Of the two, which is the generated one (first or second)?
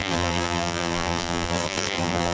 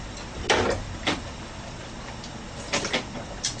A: first